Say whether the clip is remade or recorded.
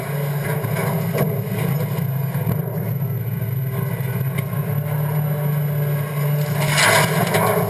recorded